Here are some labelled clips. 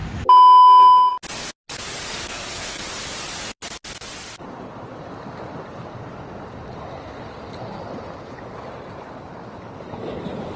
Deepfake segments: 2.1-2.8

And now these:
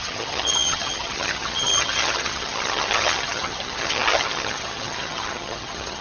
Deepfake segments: 0.0-6.0

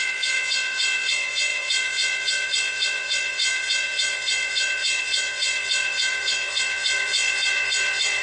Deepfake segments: 0.0-8.2